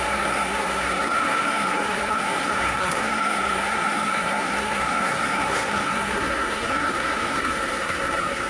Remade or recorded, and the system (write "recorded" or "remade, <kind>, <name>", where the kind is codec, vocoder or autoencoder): remade, codec, SNAC